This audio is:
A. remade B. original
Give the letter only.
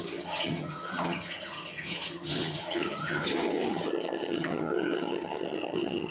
A